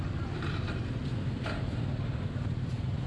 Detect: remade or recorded recorded